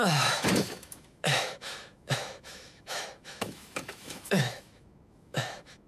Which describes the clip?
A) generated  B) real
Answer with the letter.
A